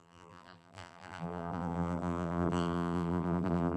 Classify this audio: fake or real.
fake